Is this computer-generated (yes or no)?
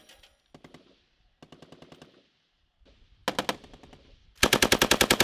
no